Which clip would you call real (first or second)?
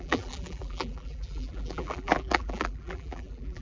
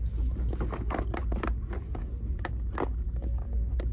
second